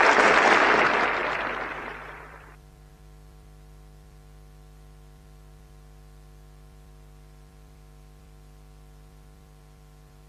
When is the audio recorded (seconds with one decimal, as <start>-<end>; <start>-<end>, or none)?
none